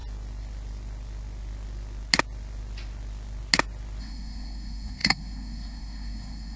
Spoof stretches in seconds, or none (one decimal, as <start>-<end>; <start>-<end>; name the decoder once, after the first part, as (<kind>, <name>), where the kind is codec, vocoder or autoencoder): 4.0-6.6 (codec, SNAC)